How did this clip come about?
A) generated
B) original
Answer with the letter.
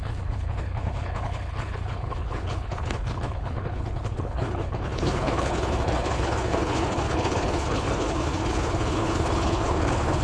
A